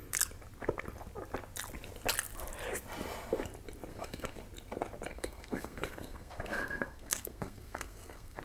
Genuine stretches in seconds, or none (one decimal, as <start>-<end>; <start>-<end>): 0.0-3.9; 4.4-5.1

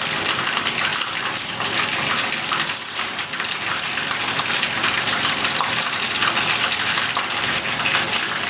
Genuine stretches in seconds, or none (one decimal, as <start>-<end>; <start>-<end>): 0.0-8.5

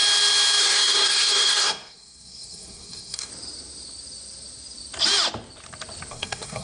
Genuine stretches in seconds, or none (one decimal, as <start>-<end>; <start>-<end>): 0.0-0.6; 3.3-6.1

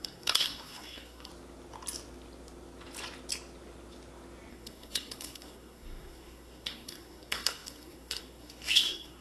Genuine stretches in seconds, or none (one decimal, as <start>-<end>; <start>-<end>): 1.3-4.5

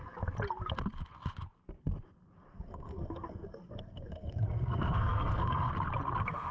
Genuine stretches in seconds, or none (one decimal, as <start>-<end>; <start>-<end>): 0.0-2.5; 5.7-6.5

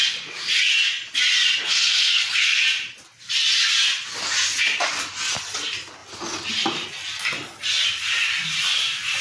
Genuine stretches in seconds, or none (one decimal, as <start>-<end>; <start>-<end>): 0.0-1.6; 2.6-9.2

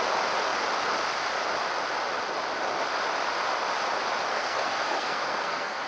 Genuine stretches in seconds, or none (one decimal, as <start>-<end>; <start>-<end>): 0.0-4.3